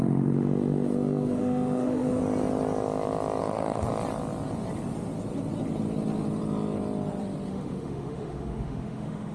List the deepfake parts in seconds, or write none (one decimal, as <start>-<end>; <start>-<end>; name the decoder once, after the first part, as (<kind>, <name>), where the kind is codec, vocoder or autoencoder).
0.0-2.2 (autoencoder, DAC-VAE); 3.4-3.9; 7.5-9.3